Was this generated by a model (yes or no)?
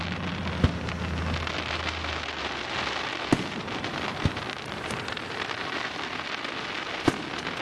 no